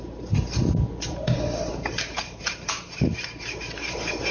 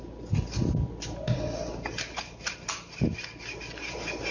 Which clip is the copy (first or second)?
first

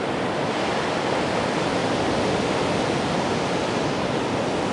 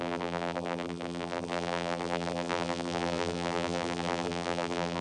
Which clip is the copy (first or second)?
second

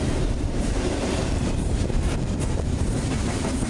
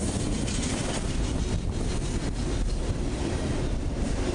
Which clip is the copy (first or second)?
first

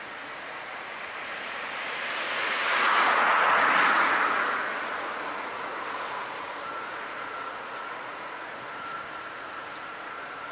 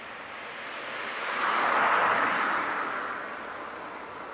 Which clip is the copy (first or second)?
first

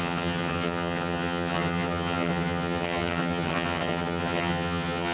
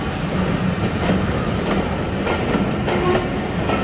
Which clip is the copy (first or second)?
first